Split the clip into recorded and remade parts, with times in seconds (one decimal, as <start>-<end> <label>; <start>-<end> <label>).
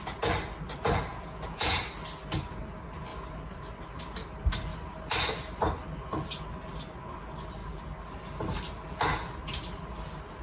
0.0-1.1 recorded; 1.1-1.8 remade; 1.8-10.4 recorded